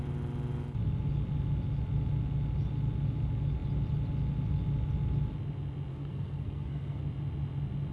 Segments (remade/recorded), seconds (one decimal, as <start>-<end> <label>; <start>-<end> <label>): 0.0-5.9 recorded; 5.9-7.0 remade; 7.0-7.9 recorded